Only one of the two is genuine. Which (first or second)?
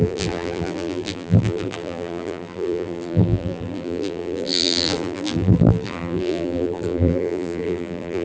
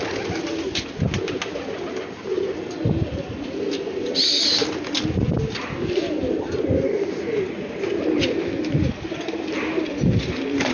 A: second